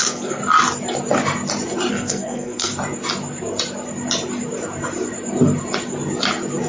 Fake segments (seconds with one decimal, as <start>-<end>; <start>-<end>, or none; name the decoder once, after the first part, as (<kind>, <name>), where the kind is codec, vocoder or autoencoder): 0.0-0.4 (codec, SNAC); 1.9-2.7